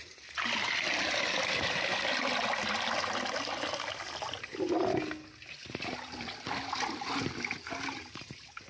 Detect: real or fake real